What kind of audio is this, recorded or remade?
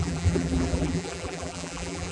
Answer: remade